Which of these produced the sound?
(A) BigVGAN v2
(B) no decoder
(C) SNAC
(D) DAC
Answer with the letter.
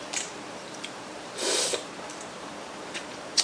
A